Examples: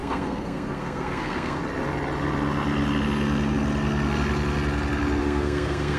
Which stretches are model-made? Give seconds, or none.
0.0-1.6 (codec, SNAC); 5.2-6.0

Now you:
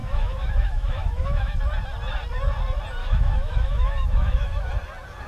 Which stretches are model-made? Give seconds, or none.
0.0-1.6 (autoencoder, DAC-VAE); 3.0-4.7

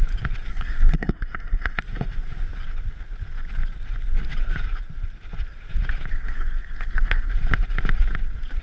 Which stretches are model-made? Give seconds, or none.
0.5-1.8 (codec, SNAC); 6.1-7.3

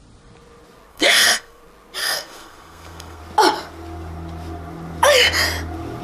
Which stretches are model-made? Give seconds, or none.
0.9-1.6 (codec, SNAC); 2.0-3.2

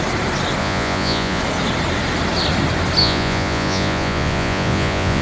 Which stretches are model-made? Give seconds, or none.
0.6-1.4 (vocoder, Vocos); 3.0-5.2